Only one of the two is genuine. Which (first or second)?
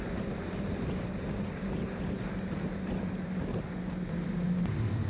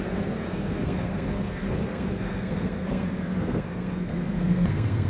first